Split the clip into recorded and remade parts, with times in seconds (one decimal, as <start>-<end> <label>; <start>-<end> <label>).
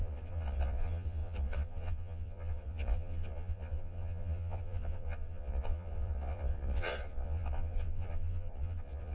0.0-9.1 remade